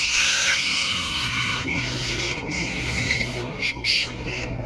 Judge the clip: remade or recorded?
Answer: remade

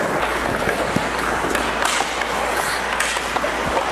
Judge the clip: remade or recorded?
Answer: recorded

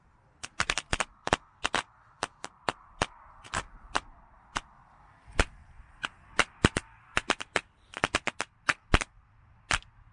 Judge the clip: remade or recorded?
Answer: remade